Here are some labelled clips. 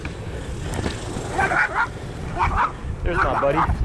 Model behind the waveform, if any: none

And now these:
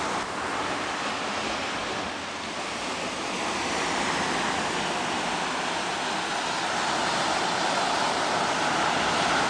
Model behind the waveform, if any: none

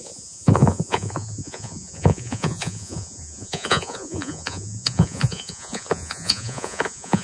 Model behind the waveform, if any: vocoder, Vocos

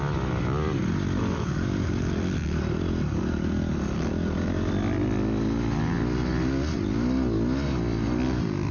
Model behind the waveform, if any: none